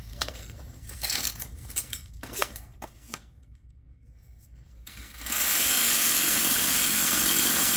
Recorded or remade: remade